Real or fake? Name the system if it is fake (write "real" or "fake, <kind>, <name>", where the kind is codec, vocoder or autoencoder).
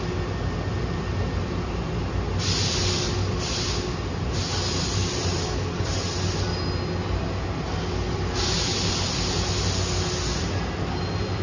real